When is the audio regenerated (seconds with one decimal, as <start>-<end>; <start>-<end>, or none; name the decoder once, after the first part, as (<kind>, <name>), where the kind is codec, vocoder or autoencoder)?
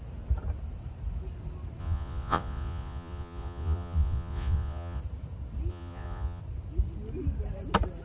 1.8-5.0 (vocoder, Vocos); 5.7-6.4